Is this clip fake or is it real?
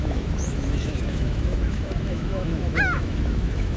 fake